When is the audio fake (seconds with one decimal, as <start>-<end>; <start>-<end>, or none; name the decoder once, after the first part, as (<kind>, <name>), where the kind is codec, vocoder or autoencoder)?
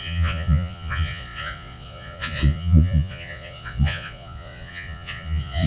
0.0-5.7 (vocoder, Vocos)